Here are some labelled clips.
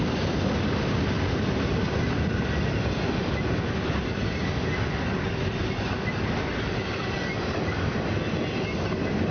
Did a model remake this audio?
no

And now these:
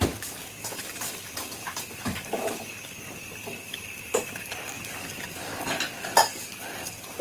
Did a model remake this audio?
yes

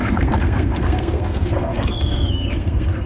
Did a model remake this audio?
yes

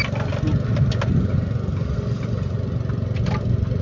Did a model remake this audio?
no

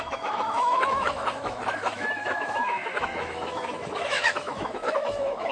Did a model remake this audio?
yes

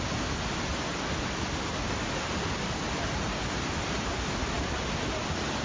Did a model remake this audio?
no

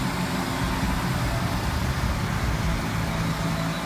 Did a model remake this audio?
no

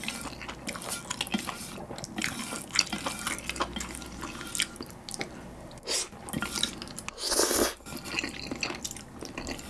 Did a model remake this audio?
no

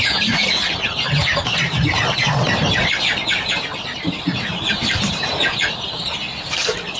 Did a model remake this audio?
no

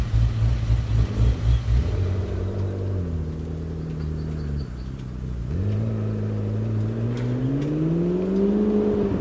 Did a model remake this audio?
no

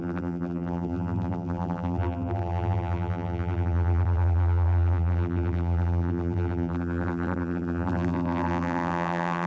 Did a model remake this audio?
yes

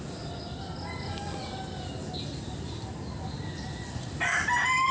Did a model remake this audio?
no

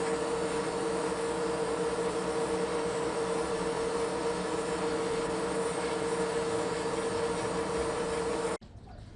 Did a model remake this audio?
no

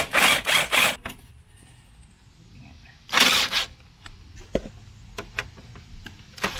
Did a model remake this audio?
no